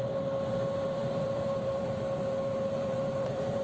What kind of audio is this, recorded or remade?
remade